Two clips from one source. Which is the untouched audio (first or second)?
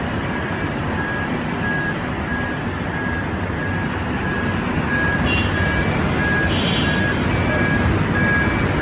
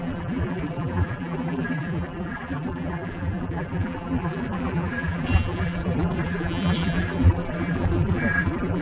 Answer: first